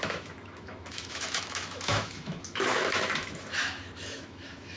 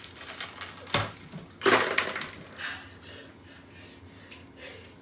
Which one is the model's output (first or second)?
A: first